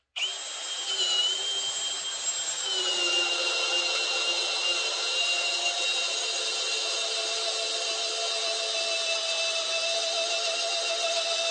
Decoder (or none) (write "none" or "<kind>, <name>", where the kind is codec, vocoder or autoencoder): none